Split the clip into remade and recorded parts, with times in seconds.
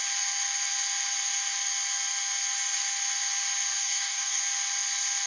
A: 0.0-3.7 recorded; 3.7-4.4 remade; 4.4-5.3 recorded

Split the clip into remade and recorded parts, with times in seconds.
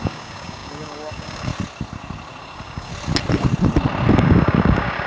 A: 0.0-1.5 remade; 1.5-2.4 recorded; 2.4-2.9 remade; 2.9-4.1 recorded; 4.1-5.1 remade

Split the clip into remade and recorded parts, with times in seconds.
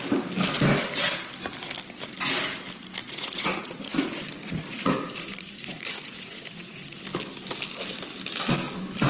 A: 0.0-3.0 recorded; 3.0-7.0 remade; 7.0-9.1 recorded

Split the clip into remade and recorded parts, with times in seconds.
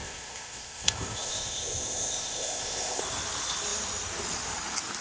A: 0.0-3.0 remade; 3.0-5.0 recorded